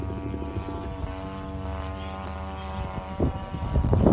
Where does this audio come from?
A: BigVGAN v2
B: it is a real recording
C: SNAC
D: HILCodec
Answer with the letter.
B